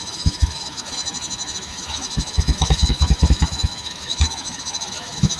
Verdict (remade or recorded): remade